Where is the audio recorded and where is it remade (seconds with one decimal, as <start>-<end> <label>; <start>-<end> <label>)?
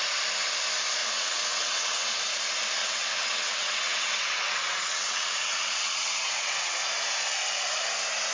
0.0-1.0 recorded; 1.0-2.2 remade; 2.2-2.8 recorded; 2.8-6.9 remade; 6.9-8.3 recorded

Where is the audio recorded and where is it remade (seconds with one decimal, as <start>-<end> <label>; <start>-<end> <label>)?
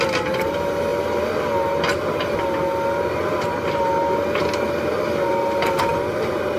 0.0-6.6 recorded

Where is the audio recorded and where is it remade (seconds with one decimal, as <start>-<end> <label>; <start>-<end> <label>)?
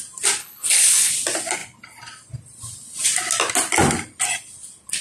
0.0-0.4 recorded; 0.4-1.1 remade; 1.1-5.0 recorded